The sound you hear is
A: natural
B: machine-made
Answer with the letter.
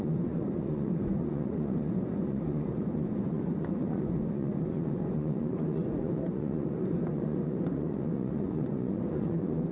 B